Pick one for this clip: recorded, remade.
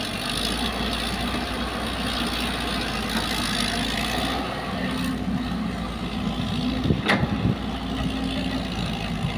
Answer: recorded